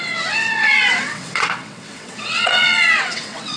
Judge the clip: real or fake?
fake